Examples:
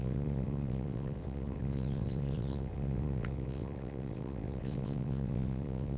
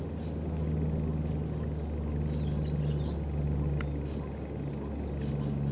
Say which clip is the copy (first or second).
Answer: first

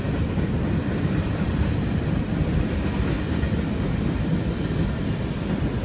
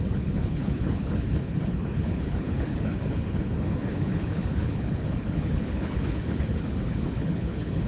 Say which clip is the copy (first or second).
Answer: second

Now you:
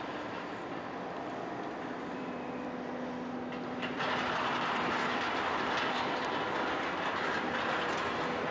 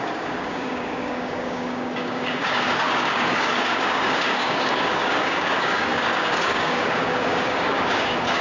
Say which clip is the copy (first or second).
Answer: second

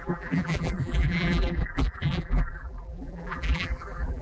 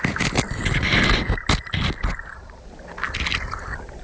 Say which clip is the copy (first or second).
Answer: first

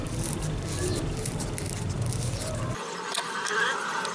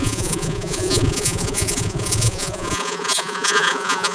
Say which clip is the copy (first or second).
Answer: second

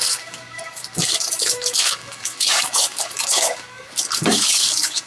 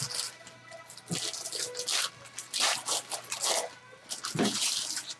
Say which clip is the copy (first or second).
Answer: first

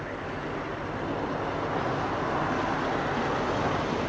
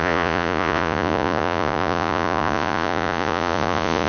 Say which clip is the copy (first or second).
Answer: second